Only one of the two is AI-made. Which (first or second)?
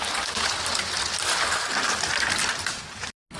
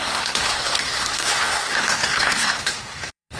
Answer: second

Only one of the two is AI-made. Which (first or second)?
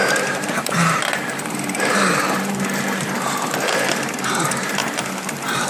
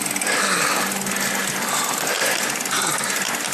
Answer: first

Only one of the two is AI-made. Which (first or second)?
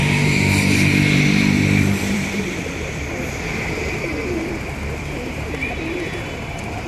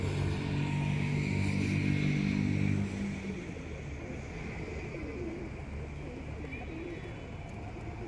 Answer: first